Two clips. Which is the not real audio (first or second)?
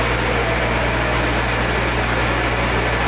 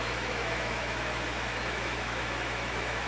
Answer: second